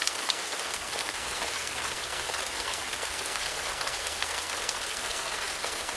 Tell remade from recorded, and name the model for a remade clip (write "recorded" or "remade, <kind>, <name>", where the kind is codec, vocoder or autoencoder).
remade, codec, SNAC